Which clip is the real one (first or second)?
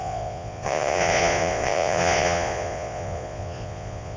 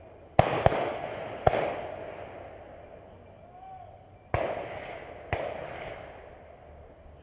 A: second